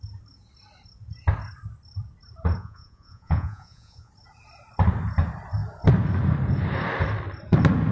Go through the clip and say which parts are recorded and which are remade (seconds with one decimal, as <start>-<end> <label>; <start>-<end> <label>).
0.0-2.6 recorded; 2.6-4.1 remade; 4.1-7.9 recorded